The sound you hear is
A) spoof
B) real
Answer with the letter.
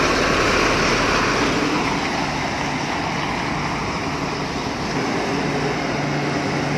B